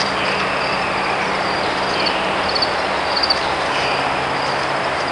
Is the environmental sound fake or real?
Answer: real